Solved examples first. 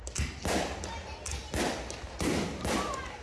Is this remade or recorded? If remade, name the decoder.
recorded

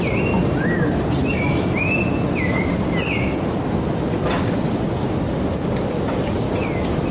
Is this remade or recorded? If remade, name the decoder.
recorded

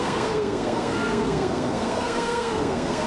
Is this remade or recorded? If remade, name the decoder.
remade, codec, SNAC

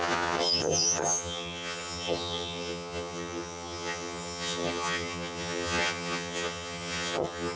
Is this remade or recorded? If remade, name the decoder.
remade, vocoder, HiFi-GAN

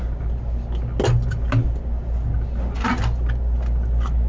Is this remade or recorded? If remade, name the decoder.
recorded